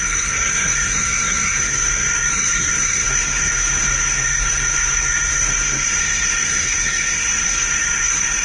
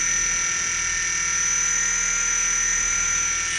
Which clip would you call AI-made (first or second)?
first